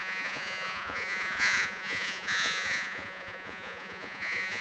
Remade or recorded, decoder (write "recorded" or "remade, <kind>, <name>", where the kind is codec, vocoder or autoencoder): remade, vocoder, Vocos